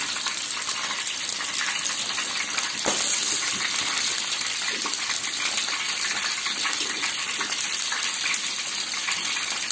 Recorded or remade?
recorded